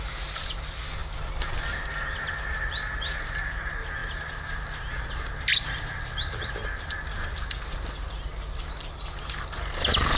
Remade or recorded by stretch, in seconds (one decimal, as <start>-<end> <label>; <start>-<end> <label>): 0.0-10.2 recorded